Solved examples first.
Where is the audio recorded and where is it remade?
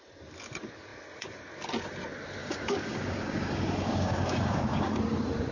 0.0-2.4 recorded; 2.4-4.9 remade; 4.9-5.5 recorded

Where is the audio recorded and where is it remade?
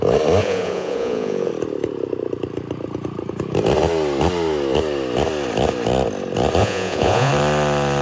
0.0-0.4 recorded; 0.4-1.5 remade; 1.5-6.6 recorded; 6.6-7.3 remade; 7.3-8.0 recorded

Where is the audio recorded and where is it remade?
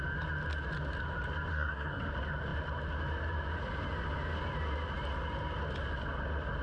0.0-1.5 recorded; 1.5-2.0 remade; 2.0-6.6 recorded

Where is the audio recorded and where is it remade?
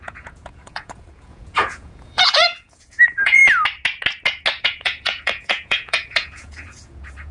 0.0-3.4 remade; 3.4-4.6 recorded; 4.6-7.3 remade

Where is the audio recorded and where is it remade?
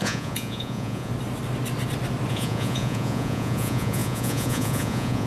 0.0-1.1 remade; 1.1-2.3 recorded; 2.3-5.3 remade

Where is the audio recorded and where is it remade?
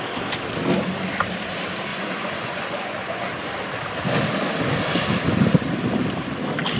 0.0-1.9 recorded; 1.9-3.3 remade; 3.3-6.8 recorded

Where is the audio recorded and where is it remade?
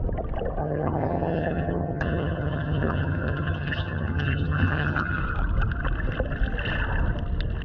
0.0-0.6 recorded; 0.6-5.2 remade; 5.2-7.6 recorded